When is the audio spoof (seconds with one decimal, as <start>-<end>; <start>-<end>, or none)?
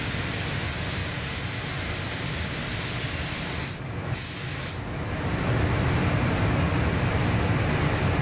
none